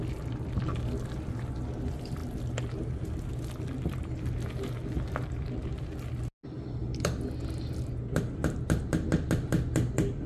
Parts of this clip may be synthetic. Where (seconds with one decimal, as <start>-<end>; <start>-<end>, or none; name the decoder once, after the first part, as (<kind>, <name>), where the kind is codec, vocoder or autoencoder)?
none

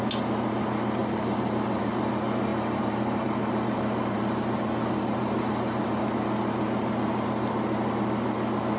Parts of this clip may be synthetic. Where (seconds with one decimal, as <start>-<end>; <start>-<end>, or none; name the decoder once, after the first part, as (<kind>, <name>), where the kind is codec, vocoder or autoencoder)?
1.0-2.1 (vocoder, BigVGAN v2); 2.5-6.0